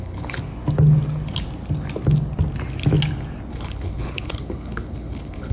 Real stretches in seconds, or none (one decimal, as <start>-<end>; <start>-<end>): 0.5-3.5